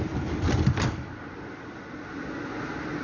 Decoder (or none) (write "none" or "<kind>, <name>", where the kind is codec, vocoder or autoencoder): none